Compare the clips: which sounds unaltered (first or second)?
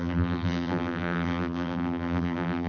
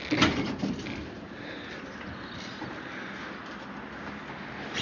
second